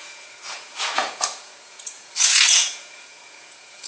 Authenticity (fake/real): fake